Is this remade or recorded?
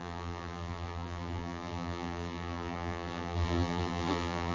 remade